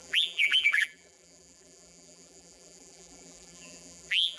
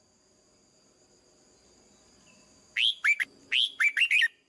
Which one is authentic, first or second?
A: second